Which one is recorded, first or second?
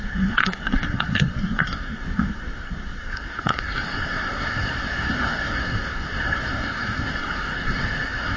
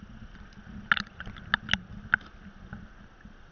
second